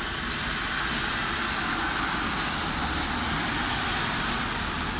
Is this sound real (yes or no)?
yes